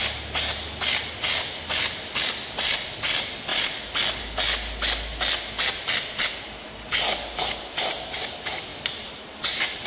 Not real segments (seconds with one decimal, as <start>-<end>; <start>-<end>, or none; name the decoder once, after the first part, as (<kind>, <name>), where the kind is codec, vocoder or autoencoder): none